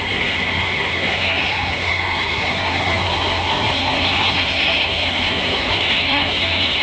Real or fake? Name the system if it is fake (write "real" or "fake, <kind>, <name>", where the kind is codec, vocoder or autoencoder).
fake, codec, SNAC